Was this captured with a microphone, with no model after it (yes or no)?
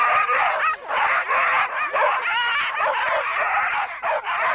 yes